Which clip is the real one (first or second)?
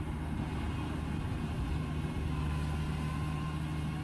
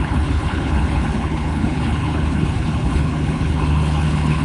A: first